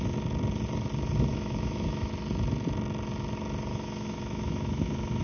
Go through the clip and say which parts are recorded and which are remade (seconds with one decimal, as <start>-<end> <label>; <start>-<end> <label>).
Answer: 0.0-1.3 recorded; 1.3-2.1 remade; 2.1-3.7 recorded; 3.7-5.2 remade